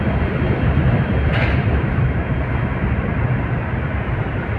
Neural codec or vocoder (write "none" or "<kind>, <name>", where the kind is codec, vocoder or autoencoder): none